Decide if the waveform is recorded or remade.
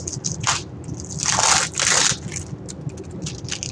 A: recorded